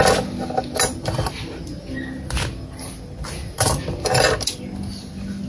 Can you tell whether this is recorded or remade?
recorded